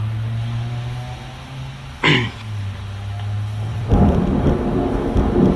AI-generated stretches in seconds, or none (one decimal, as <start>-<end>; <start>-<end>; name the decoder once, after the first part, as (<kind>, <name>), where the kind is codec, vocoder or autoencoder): 3.7-4.3 (vocoder, BigVGAN v2)